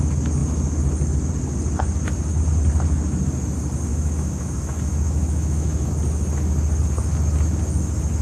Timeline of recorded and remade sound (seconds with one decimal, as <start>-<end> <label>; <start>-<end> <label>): 0.0-3.9 recorded; 3.9-5.9 remade; 5.9-8.2 recorded